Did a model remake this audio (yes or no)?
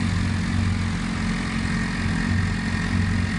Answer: no